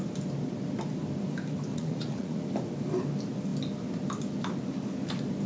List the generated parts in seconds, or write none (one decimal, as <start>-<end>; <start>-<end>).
1.7-2.4